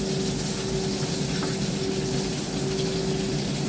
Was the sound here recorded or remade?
recorded